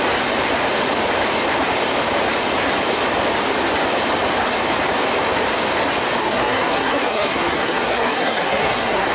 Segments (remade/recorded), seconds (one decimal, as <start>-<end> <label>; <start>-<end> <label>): 0.0-6.2 recorded; 6.2-9.1 remade